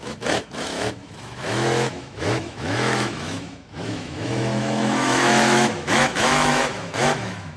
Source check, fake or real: fake